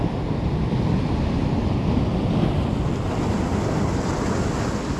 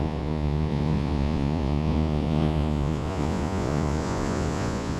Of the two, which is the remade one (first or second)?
second